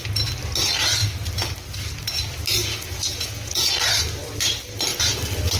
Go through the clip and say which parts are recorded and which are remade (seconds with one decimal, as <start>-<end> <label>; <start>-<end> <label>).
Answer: 0.0-2.6 recorded; 2.6-3.7 remade; 3.7-5.6 recorded